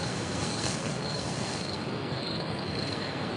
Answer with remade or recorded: remade